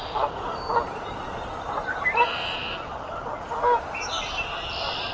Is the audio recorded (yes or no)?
yes